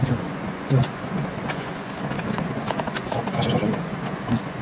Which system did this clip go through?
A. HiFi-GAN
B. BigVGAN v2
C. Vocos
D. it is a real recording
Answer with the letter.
C